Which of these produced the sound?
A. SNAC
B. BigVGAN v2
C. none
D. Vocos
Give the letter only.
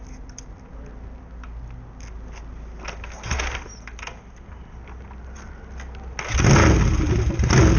C